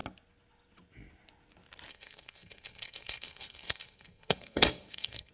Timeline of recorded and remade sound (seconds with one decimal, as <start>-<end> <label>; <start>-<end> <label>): 0.0-1.9 recorded; 1.9-5.3 remade

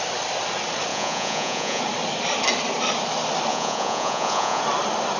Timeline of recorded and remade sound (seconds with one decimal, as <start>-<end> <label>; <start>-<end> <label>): 0.0-0.9 recorded; 0.9-1.8 remade; 1.8-3.5 recorded; 3.5-4.6 remade; 4.6-5.2 recorded

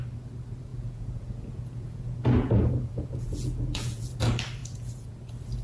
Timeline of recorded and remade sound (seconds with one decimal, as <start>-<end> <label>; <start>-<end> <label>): 0.0-0.7 recorded; 0.7-4.1 remade; 4.1-4.6 recorded; 4.6-5.1 remade; 5.1-5.6 recorded

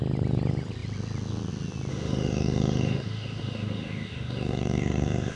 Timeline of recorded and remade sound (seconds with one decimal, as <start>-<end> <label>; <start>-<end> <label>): 0.0-1.9 recorded; 1.9-5.4 remade